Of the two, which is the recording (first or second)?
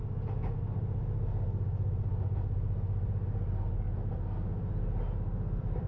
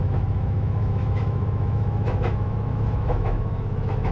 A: first